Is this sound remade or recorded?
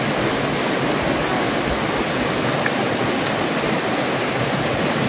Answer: recorded